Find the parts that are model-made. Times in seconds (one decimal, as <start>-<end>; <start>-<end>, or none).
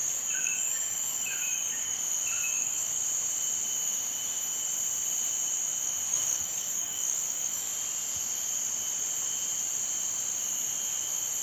0.0-2.0; 2.5-3.0; 6.1-7.7